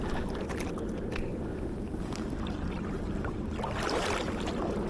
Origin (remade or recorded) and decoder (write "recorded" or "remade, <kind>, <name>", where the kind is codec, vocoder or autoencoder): recorded